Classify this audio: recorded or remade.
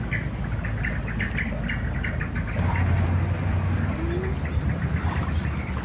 recorded